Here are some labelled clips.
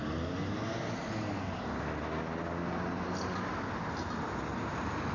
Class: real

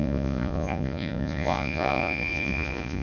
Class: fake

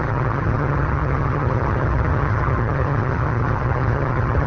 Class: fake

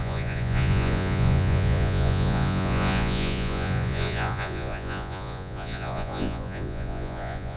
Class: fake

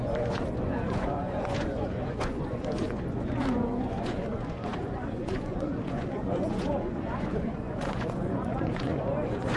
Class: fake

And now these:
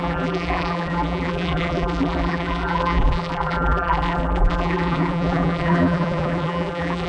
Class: fake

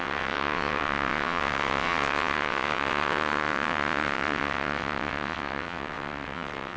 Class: fake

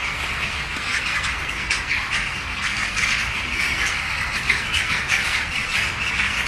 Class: fake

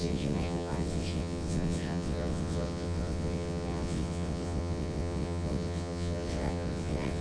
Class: fake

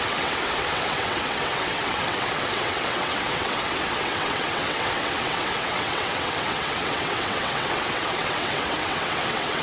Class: fake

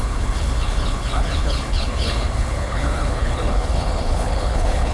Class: fake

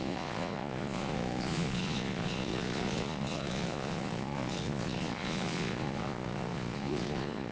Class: fake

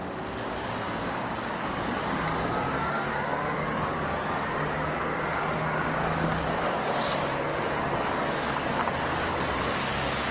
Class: fake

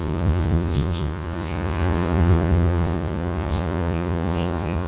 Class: fake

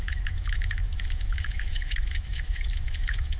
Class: fake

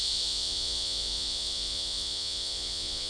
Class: fake